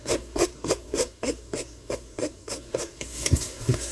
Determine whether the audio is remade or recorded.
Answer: remade